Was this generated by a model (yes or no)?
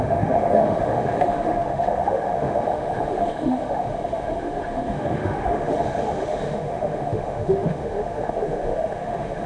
yes